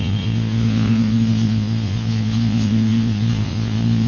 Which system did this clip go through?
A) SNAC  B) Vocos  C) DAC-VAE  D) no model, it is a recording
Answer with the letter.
B